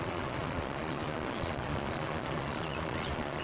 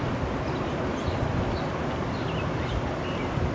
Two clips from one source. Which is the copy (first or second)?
first